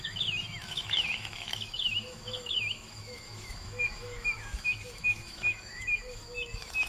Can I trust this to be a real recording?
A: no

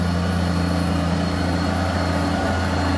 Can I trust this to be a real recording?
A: yes